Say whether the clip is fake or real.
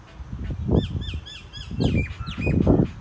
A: real